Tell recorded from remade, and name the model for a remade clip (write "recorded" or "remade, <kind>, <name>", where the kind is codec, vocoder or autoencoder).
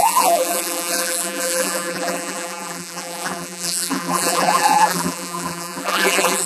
remade, vocoder, BigVGAN v2